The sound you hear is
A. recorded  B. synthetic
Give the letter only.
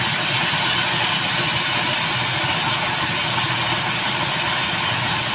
A